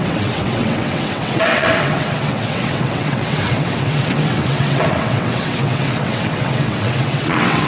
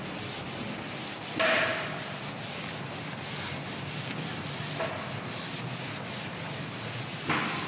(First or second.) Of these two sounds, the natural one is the second